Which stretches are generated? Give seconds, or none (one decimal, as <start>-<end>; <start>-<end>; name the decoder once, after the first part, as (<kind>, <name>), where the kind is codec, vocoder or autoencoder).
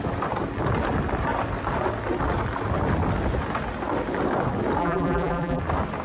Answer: 4.8-5.6 (vocoder, BigVGAN v2)